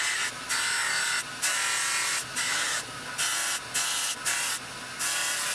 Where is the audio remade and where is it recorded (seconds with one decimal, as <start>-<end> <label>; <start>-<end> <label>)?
0.0-5.5 recorded